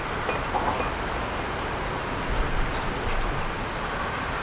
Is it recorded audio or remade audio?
recorded